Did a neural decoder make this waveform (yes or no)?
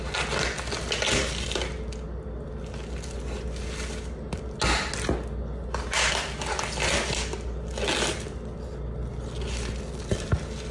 no